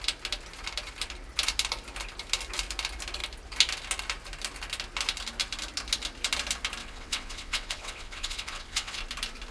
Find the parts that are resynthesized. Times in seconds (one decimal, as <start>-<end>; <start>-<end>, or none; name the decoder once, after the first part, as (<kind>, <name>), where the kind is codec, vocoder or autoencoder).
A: 6.8-9.0 (vocoder, WaveNeXt)